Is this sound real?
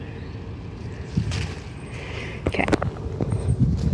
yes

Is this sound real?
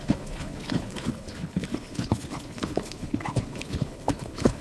no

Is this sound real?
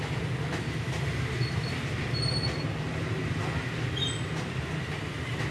yes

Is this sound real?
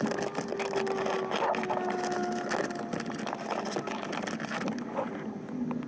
yes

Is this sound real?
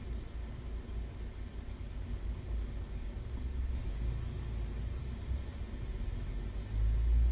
yes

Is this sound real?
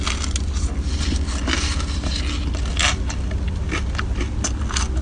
yes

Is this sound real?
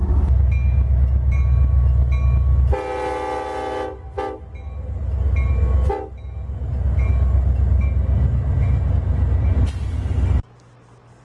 yes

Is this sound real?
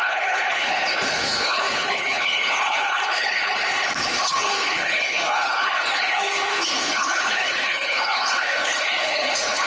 no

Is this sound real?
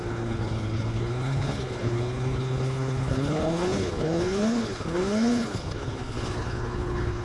no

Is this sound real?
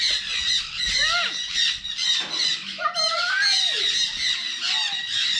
yes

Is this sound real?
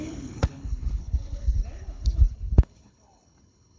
no